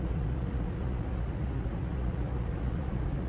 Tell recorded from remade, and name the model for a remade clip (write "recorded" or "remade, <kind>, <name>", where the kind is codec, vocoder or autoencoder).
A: remade, vocoder, Vocos